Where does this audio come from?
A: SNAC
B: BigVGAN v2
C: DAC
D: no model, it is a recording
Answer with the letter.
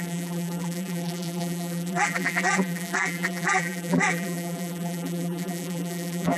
B